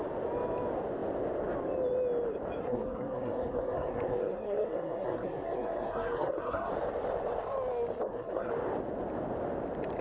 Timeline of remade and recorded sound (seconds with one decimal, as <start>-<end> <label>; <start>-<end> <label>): 0.0-2.6 recorded; 2.6-6.7 remade; 6.7-8.0 recorded; 8.0-8.5 remade; 8.5-10.0 recorded

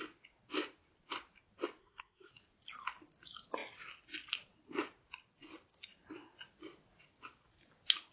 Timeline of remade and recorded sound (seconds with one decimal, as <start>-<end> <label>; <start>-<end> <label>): 0.0-1.8 recorded; 1.8-2.3 remade; 2.3-8.1 recorded

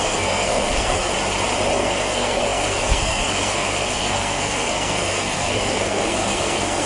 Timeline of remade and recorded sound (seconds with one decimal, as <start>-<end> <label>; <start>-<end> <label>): 0.0-1.1 remade; 1.1-1.8 recorded; 1.8-6.9 remade

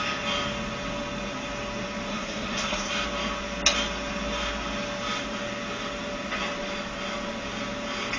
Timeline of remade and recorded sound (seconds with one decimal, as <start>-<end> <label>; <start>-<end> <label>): 0.0-2.1 recorded; 2.1-2.9 remade; 2.9-8.2 recorded

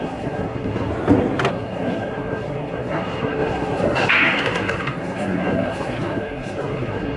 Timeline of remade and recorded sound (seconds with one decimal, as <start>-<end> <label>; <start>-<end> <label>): 0.0-0.9 remade; 0.9-1.5 recorded; 1.5-7.2 remade

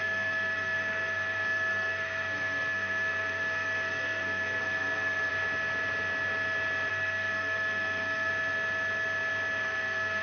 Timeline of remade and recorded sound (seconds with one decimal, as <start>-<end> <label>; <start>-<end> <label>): 0.0-5.3 remade; 5.3-6.9 recorded; 6.9-8.3 remade; 8.3-9.6 recorded; 9.6-10.2 remade